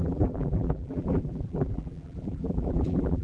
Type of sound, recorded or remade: remade